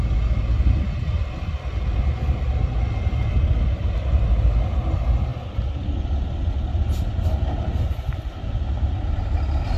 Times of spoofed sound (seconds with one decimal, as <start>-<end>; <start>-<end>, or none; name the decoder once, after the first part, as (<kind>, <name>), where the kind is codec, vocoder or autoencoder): none